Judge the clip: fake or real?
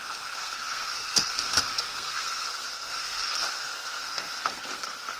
fake